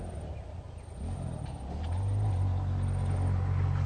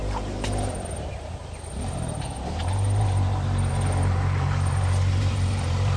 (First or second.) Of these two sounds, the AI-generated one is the second